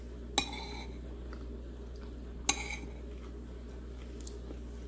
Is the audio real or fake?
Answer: real